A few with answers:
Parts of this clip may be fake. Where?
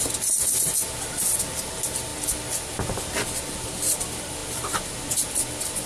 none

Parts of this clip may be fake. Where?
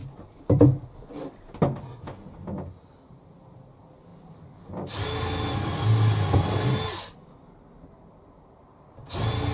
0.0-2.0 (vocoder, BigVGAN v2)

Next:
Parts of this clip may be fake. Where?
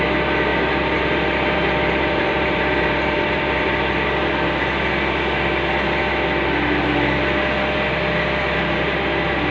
0.5-3.9 (vocoder, BigVGAN v2)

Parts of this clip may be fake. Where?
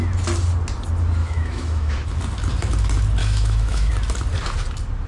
1.2-1.9 (autoencoder, DAC-VAE); 3.2-3.9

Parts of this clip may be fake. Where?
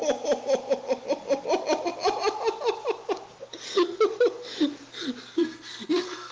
5.4-6.3 (codec, SNAC)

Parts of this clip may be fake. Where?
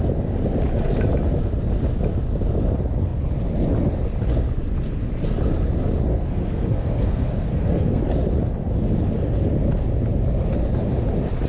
6.1-8.0 (codec, SNAC)